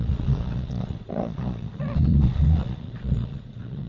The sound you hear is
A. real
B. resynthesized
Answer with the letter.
B